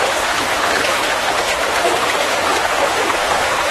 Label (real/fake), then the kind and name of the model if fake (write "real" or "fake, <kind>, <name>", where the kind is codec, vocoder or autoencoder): fake, autoencoder, DAC-VAE